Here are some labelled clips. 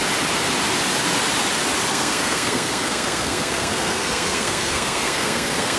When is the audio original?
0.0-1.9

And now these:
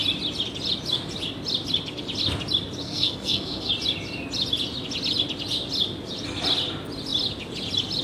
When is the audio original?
0.0-2.8; 3.7-8.0

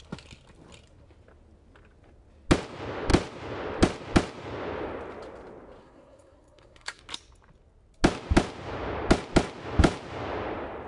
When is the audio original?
0.0-5.8; 7.0-10.9

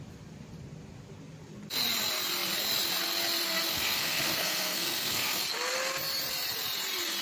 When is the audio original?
0.0-3.7; 5.4-7.2

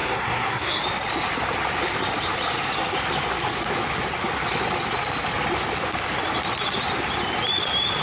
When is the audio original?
0.8-8.0

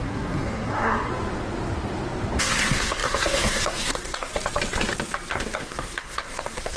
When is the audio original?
1.1-2.4; 4.3-5.3

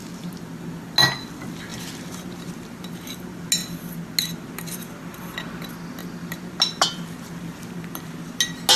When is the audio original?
0.0-8.8